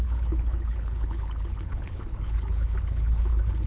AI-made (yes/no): yes